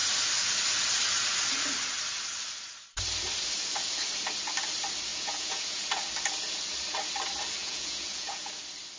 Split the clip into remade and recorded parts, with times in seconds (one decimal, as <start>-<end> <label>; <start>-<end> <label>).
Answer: 0.0-5.1 recorded; 5.1-5.8 remade; 5.8-7.6 recorded; 7.6-8.5 remade; 8.5-9.0 recorded